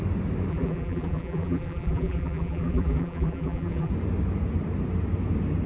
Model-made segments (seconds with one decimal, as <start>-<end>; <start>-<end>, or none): 0.5-3.9

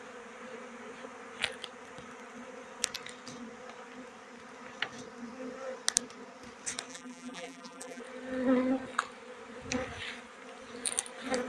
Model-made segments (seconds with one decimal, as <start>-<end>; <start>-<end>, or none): 6.9-8.0

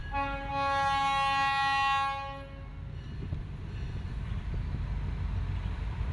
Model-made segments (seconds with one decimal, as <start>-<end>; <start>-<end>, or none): 0.0-0.5

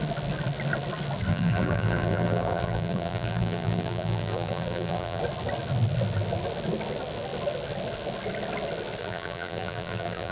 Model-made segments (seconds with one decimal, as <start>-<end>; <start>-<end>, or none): 1.3-5.2; 9.0-10.3

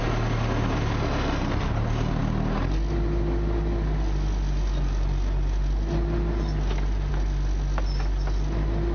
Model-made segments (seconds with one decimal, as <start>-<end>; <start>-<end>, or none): none

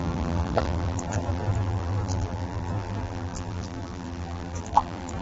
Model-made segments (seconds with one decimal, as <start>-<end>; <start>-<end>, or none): 0.0-5.2

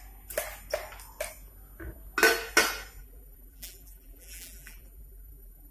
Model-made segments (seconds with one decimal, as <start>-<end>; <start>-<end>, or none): 3.0-5.7

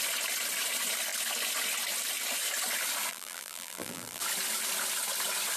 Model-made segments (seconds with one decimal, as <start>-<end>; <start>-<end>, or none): 3.1-4.2